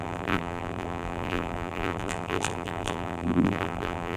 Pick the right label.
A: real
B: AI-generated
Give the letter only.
B